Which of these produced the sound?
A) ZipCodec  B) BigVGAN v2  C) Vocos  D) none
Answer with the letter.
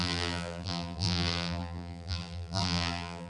B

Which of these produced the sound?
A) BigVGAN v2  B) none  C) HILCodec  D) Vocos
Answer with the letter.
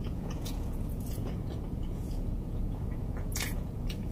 D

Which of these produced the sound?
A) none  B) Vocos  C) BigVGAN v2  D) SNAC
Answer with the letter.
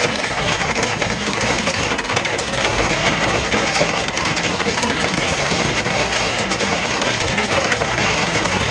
D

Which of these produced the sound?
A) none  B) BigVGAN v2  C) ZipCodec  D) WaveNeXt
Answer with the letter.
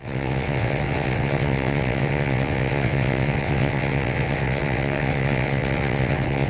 D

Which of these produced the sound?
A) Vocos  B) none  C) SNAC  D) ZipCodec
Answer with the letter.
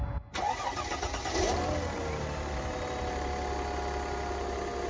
B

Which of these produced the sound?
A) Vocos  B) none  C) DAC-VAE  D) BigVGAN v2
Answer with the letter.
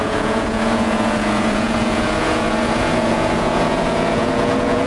A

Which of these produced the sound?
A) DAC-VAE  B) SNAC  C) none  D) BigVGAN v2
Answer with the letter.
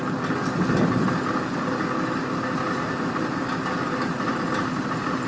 C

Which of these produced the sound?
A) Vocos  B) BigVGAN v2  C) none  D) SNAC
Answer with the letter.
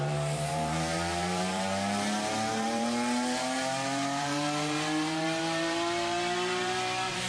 B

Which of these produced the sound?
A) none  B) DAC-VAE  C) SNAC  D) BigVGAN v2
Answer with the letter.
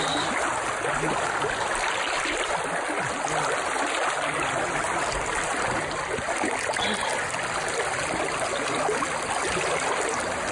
A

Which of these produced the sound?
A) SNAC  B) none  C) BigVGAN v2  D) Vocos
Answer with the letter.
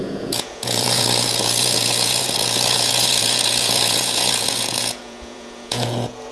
D